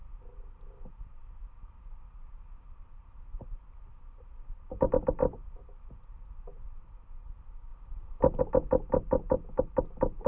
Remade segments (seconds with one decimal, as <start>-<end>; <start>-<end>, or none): 5.2-5.8; 7.7-8.4